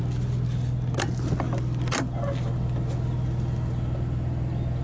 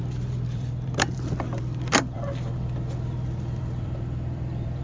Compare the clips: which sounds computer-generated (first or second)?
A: second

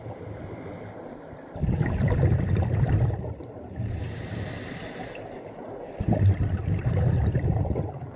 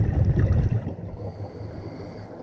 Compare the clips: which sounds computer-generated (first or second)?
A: first